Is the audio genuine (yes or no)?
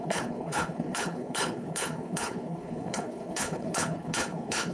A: no